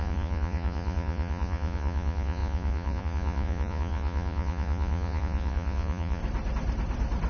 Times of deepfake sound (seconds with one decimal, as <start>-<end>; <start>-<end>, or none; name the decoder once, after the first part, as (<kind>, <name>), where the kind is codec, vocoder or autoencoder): 0.0-6.2 (vocoder, Vocos)